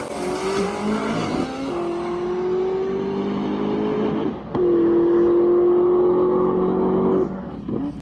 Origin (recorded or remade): recorded